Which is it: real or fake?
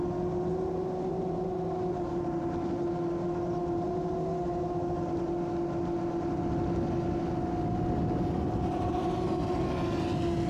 real